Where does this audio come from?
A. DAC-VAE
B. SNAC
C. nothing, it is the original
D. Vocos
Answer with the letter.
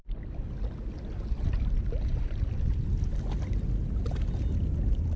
C